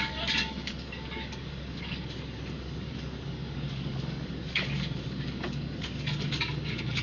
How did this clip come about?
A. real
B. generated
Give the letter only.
B